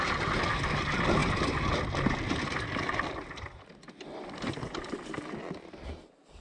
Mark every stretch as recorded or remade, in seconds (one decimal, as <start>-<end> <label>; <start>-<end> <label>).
0.0-6.4 recorded